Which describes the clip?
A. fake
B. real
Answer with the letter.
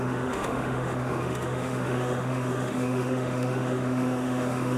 A